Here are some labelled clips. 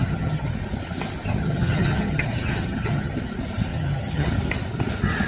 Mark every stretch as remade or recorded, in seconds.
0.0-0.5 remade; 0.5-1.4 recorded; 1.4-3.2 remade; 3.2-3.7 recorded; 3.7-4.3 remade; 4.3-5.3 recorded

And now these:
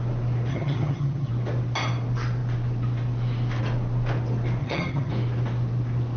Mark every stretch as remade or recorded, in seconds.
0.0-0.5 recorded; 0.5-1.3 remade; 1.3-4.6 recorded; 4.6-5.1 remade; 5.1-6.2 recorded

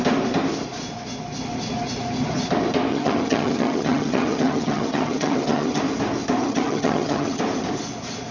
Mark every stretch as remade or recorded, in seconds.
0.0-2.9 recorded; 2.9-5.8 remade; 5.8-6.4 recorded; 6.4-7.4 remade; 7.4-8.3 recorded

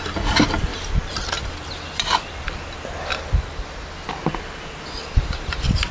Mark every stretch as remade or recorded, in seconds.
0.0-5.9 recorded

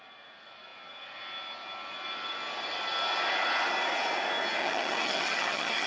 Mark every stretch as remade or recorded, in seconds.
0.0-4.6 recorded; 4.6-5.9 remade

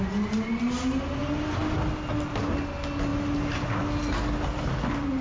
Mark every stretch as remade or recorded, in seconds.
0.0-5.2 recorded

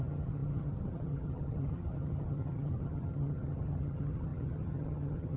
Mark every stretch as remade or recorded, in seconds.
0.0-5.4 remade